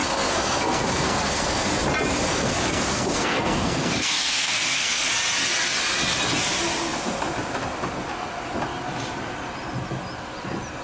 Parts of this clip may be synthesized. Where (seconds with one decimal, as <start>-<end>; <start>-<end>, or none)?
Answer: 0.0-1.7; 2.3-5.1